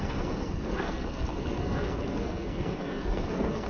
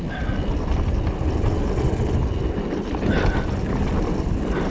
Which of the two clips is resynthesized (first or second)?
first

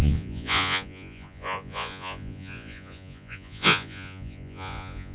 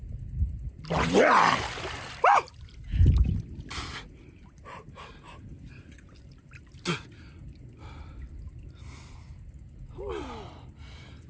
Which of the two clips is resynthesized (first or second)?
first